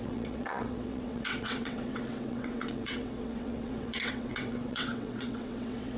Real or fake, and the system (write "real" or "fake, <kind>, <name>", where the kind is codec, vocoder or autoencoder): fake, vocoder, WaveNeXt